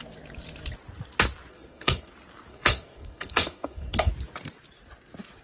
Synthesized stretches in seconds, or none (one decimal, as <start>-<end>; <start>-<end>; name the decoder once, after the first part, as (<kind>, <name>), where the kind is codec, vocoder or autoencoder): 1.5-2.1 (codec, SNAC); 2.5-4.1